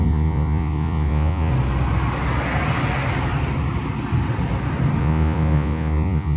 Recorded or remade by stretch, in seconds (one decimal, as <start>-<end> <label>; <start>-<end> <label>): 0.0-1.5 remade; 1.5-5.0 recorded; 5.0-6.4 remade